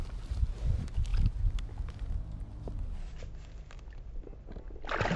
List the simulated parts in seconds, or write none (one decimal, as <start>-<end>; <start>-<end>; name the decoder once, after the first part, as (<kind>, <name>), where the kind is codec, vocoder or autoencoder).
none